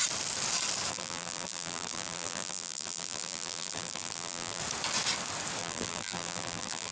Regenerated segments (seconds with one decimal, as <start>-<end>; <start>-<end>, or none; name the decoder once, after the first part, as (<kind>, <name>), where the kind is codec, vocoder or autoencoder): 0.9-4.6 (vocoder, BigVGAN v2); 5.6-6.9